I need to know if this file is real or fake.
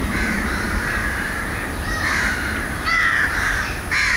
fake